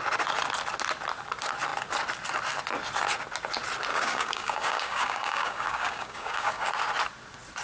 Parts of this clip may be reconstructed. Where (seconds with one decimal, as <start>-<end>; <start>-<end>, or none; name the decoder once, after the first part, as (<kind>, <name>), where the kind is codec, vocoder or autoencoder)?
3.9-6.7 (codec, DAC)